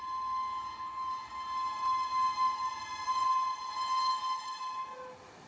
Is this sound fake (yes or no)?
no